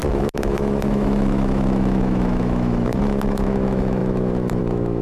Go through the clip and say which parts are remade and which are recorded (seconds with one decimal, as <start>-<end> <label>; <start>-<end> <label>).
0.0-5.0 remade